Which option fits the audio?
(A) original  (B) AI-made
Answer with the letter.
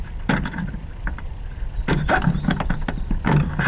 A